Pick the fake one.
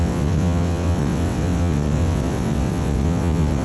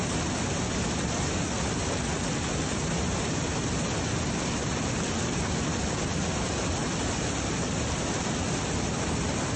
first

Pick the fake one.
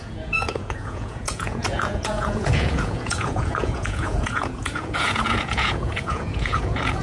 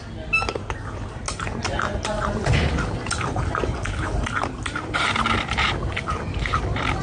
first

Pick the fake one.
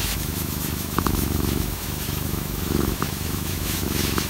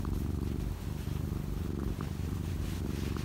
first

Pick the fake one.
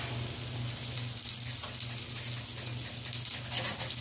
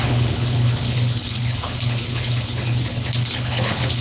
second